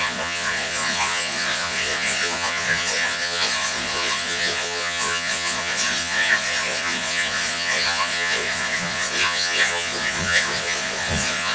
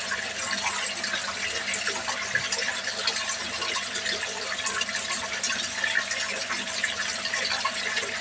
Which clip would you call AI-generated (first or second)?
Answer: first